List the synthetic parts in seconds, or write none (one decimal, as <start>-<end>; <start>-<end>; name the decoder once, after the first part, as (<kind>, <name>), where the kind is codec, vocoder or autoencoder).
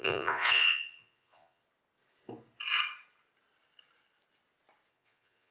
0.0-1.6 (vocoder, Vocos); 4.9-5.5